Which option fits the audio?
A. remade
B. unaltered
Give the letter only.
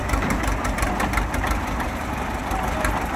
A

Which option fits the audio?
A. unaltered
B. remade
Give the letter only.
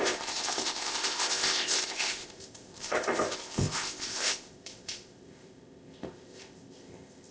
B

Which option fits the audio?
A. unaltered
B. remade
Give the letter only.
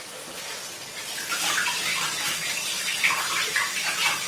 A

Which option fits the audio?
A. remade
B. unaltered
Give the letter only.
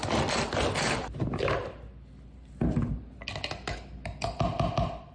B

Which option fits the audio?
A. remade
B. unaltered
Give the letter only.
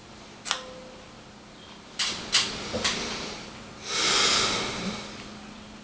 B